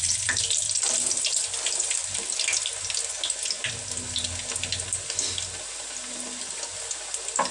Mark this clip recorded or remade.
recorded